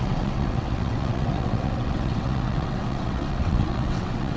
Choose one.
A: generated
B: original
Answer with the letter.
A